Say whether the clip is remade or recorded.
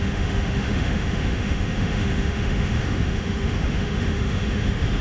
remade